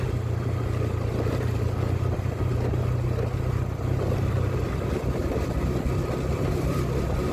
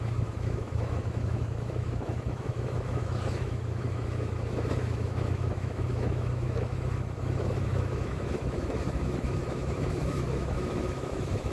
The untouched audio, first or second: first